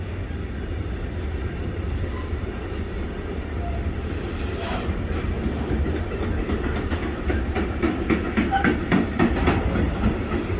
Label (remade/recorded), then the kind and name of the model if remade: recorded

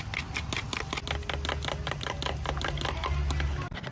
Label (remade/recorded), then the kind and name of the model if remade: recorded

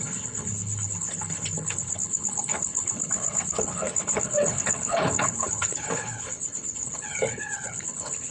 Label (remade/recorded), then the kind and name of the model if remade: remade, codec, HILCodec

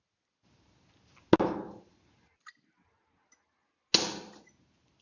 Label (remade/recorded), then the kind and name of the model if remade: recorded